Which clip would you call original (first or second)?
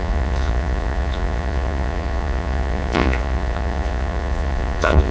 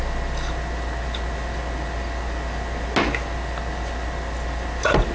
second